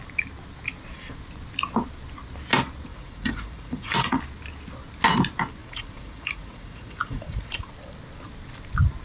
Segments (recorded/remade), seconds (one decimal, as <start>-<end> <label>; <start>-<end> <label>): 0.0-2.9 recorded; 2.9-4.2 remade; 4.2-5.6 recorded; 5.6-7.7 remade; 7.7-9.0 recorded